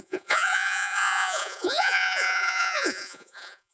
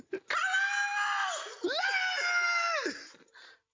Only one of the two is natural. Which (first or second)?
second